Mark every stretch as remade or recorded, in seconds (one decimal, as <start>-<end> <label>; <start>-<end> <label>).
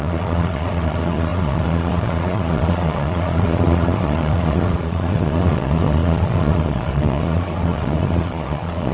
0.0-8.9 remade